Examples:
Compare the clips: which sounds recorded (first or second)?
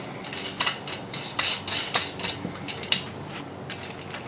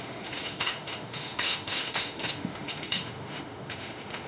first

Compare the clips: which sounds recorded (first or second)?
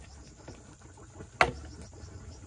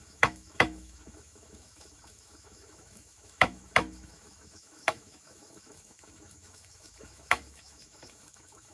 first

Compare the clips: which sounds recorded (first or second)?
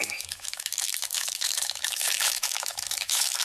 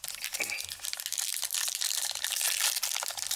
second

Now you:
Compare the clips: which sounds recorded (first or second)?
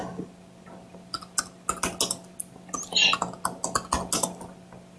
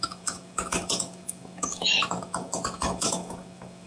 first